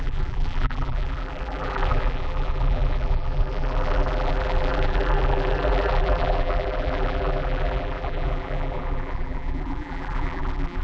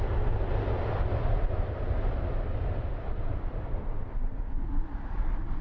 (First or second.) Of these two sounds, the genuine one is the second